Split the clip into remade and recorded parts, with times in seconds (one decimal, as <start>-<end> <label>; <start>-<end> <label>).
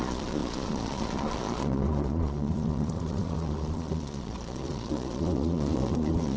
0.0-6.4 remade